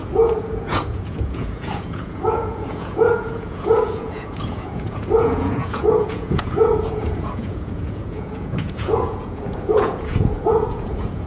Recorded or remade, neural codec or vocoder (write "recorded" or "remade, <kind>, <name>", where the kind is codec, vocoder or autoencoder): remade, vocoder, Vocos